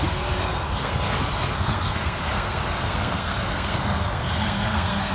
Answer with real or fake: fake